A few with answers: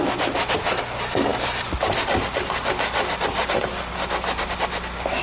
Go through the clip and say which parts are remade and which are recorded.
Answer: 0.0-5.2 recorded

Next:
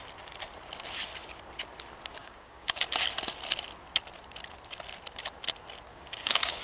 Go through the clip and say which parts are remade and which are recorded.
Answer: 0.0-2.2 recorded; 2.2-2.8 remade; 2.8-5.9 recorded; 5.9-6.6 remade

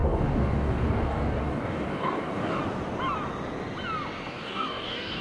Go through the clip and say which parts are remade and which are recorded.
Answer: 0.0-2.6 remade; 2.6-4.3 recorded; 4.3-5.2 remade